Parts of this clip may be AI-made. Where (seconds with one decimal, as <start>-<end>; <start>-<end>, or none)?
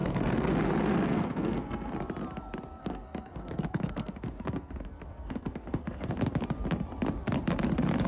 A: 0.0-0.5; 0.9-1.9; 2.8-6.1